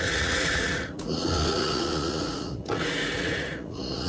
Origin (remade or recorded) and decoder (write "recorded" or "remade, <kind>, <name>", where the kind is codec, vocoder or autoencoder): remade, vocoder, Vocos